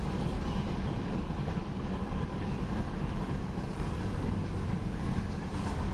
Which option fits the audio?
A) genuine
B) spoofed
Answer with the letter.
B